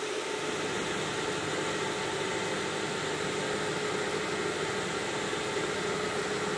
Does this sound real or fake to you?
real